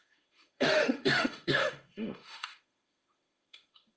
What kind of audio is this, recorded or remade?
remade